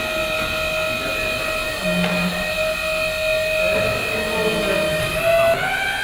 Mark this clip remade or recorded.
recorded